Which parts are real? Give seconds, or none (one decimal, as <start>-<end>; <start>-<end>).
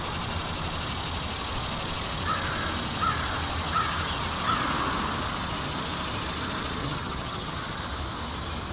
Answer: 0.0-6.8; 7.8-8.7